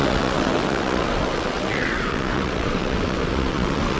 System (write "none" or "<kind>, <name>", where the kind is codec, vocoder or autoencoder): vocoder, WaveNeXt